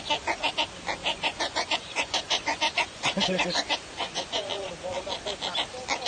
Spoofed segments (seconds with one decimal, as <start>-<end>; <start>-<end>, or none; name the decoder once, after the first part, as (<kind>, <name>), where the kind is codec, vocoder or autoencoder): 1.0-4.7 (vocoder, Vocos)